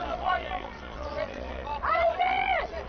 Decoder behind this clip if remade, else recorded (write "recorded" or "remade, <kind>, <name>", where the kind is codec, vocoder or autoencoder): remade, vocoder, Vocos